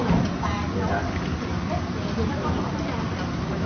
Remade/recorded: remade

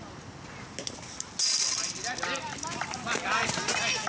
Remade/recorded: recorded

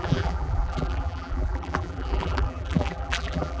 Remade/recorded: remade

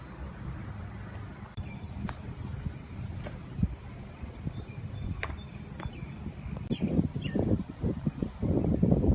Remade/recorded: remade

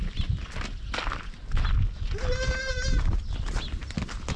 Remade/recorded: recorded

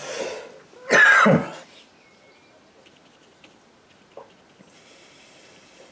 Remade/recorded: recorded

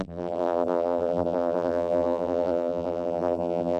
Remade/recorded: remade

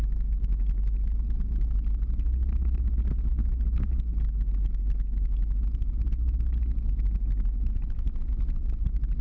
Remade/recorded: recorded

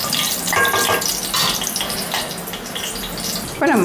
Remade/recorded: recorded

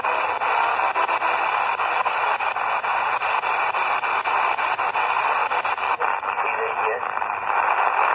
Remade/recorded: recorded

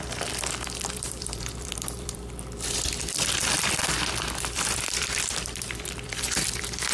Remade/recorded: remade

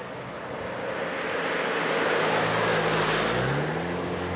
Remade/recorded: recorded